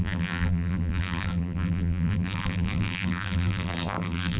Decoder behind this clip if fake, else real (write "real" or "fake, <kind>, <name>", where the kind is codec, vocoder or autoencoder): fake, vocoder, BigVGAN v2